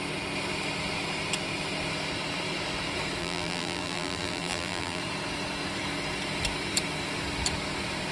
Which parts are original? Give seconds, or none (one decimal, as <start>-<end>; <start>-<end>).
0.0-3.2; 5.0-8.1